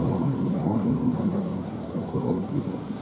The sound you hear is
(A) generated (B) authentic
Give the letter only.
A